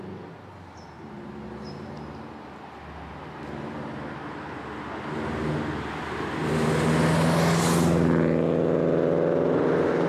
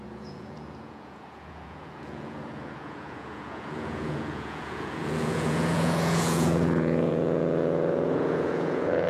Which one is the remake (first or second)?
second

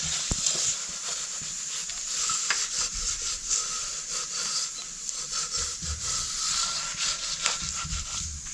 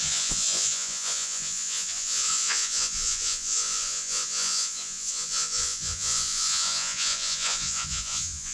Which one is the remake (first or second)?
second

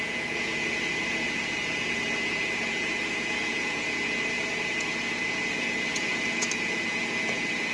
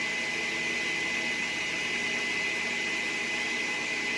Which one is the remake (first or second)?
first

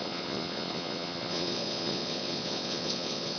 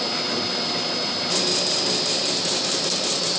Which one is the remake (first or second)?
first